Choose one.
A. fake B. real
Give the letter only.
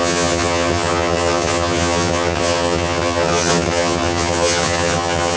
A